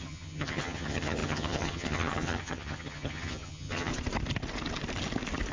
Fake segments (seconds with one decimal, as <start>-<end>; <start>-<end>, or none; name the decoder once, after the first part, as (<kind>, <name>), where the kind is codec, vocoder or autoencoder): 0.0-3.9 (vocoder, HiFi-GAN)